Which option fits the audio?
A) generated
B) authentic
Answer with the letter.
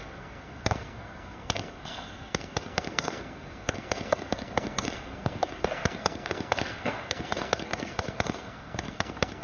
A